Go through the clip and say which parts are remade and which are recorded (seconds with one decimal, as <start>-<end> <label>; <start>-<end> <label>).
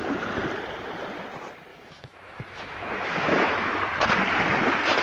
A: 0.0-1.7 recorded; 1.7-3.8 remade; 3.8-5.0 recorded